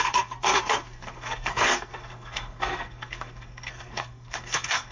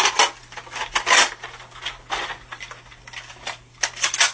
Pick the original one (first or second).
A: second